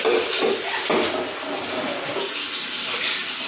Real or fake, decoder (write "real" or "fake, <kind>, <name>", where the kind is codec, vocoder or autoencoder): real